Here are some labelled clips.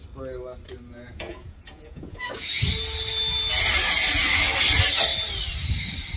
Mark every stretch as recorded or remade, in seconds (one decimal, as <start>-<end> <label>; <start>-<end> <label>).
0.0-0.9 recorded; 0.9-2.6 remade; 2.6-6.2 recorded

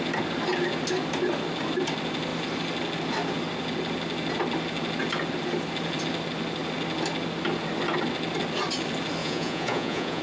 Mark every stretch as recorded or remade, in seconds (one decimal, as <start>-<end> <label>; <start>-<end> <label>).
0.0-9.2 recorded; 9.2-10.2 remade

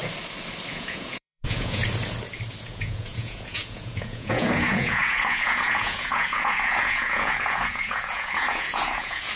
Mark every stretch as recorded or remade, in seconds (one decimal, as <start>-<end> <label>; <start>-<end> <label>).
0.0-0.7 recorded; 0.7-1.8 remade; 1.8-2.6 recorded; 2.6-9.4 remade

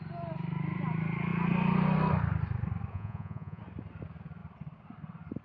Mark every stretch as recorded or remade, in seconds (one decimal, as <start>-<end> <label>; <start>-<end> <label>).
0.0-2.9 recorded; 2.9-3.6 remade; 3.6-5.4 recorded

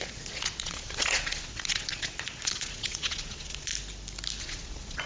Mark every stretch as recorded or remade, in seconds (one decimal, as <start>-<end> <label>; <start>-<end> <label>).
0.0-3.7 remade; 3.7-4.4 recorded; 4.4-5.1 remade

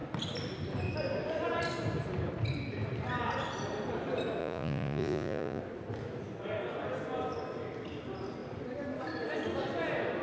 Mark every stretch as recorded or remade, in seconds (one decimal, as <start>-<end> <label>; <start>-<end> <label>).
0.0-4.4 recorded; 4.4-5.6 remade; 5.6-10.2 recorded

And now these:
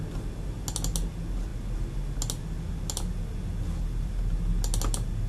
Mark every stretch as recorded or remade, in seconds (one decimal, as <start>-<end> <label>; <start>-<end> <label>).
0.0-5.3 recorded

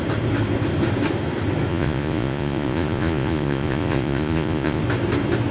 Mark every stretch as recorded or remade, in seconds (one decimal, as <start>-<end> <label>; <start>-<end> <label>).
0.0-1.7 recorded; 1.7-4.8 remade; 4.8-5.5 recorded